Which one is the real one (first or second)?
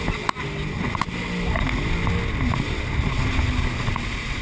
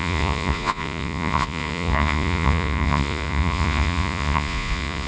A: first